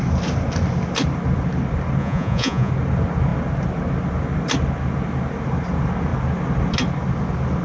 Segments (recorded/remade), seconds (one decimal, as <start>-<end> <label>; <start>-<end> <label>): 0.0-2.0 recorded; 2.0-2.7 remade; 2.7-7.6 recorded